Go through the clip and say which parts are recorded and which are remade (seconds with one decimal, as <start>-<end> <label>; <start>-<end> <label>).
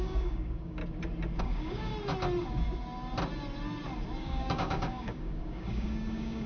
0.0-0.8 remade; 0.8-1.4 recorded; 1.4-1.9 remade; 1.9-4.2 recorded; 4.2-6.5 remade